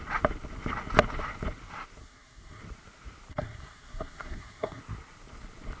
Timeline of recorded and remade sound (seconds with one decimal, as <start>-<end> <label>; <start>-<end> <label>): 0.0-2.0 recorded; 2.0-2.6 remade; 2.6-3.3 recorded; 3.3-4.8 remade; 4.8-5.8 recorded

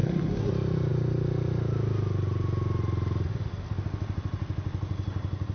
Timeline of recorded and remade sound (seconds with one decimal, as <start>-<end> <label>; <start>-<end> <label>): 0.0-0.5 remade; 0.5-5.5 recorded

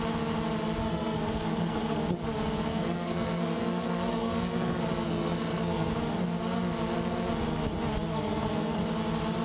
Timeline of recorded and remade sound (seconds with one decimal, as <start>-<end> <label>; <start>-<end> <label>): 0.0-0.8 recorded; 0.8-2.0 remade; 2.0-2.7 recorded; 2.7-5.9 remade; 5.9-8.1 recorded; 8.1-8.8 remade; 8.8-9.4 recorded